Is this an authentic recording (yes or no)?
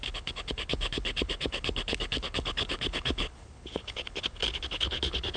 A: no